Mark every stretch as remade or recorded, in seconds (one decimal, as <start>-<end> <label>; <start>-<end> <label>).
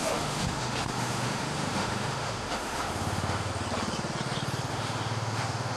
0.0-3.5 remade; 3.5-4.7 recorded; 4.7-5.8 remade